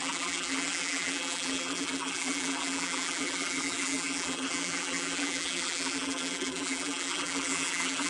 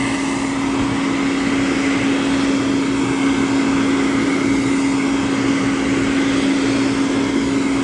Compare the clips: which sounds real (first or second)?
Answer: second